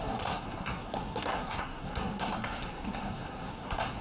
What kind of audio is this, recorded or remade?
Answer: remade